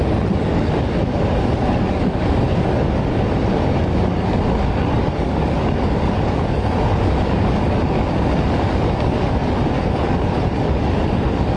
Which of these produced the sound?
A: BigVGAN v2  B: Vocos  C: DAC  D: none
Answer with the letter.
C